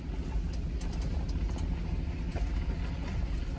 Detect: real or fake real